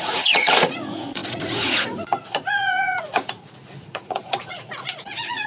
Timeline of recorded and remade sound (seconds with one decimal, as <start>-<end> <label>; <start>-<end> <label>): 0.0-5.5 remade